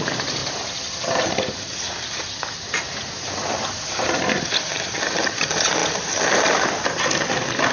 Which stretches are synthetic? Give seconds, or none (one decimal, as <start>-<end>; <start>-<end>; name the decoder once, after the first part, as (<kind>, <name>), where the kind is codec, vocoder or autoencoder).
0.4-4.4 (vocoder, BigVGAN v2)